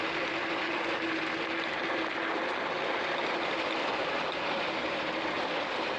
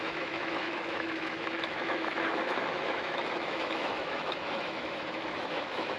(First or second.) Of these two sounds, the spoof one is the second